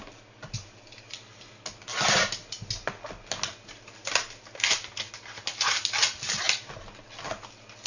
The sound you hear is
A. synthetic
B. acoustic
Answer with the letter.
B